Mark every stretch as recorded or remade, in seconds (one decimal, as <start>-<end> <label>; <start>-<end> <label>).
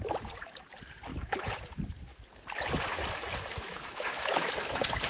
0.0-1.1 recorded; 1.1-1.6 remade; 1.6-3.7 recorded; 3.7-4.5 remade; 4.5-5.1 recorded